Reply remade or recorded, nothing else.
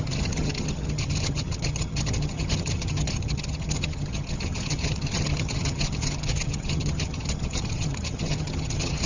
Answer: remade